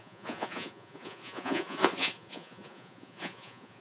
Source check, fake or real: fake